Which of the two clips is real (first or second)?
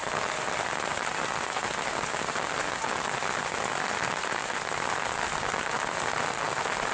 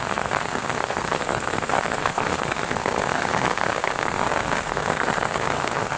first